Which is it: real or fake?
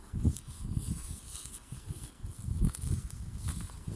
fake